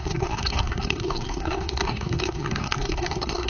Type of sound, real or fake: fake